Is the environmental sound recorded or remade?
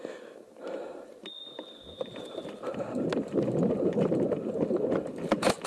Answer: recorded